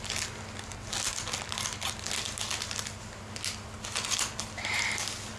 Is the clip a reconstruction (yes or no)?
no